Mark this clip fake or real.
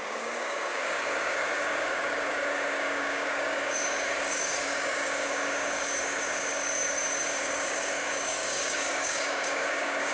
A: fake